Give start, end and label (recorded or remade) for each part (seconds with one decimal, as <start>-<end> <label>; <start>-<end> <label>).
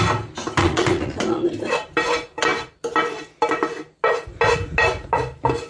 0.0-0.6 recorded; 0.6-1.5 remade; 1.5-5.7 recorded